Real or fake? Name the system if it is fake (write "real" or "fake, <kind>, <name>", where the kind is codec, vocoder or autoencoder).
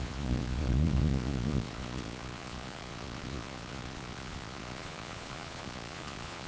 fake, vocoder, Vocos